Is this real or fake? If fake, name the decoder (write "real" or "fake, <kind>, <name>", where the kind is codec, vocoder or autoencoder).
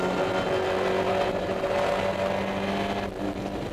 real